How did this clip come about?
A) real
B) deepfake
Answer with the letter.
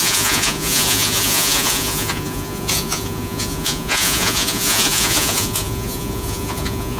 B